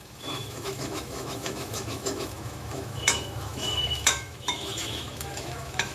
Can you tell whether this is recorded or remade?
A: remade